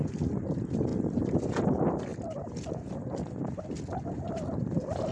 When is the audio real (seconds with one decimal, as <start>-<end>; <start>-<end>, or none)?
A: 0.0-5.1